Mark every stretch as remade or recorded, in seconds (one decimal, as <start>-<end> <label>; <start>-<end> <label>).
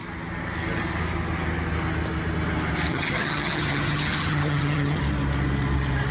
0.0-2.9 recorded; 2.9-5.0 remade; 5.0-6.1 recorded